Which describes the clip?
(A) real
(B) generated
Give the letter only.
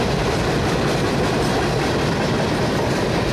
A